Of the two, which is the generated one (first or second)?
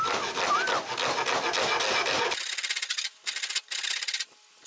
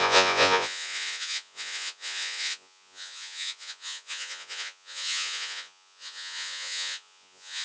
second